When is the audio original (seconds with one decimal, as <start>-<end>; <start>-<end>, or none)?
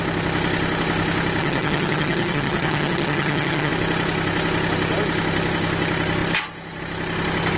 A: 0.0-1.4; 3.7-7.6